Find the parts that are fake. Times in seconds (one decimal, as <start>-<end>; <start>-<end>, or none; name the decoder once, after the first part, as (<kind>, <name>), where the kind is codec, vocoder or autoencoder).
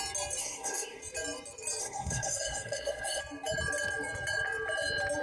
0.4-1.0 (codec, SNAC); 1.8-3.2